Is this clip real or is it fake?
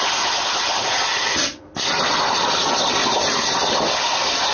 real